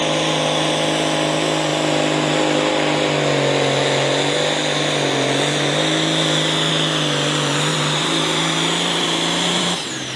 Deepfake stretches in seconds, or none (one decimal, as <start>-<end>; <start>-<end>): 7.7-10.2